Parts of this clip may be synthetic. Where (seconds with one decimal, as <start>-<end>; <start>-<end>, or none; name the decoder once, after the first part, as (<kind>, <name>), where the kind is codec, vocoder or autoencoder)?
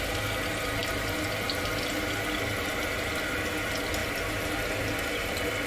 none